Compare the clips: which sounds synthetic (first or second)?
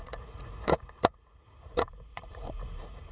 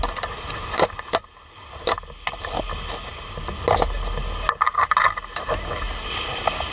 first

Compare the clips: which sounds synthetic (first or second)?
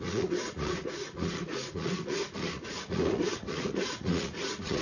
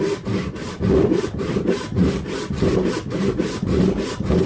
first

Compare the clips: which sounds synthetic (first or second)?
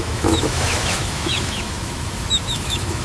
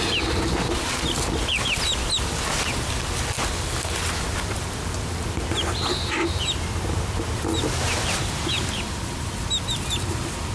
first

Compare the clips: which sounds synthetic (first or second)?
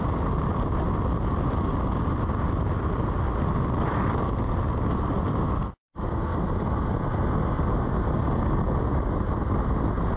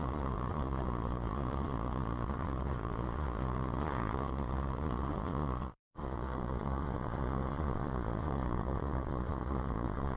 second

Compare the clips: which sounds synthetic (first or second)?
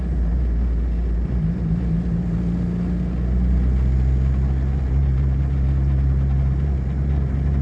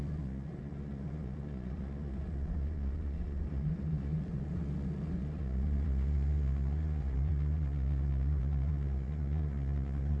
second